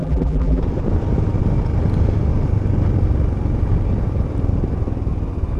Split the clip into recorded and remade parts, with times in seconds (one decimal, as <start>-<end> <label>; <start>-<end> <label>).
0.0-0.6 remade; 0.6-5.6 recorded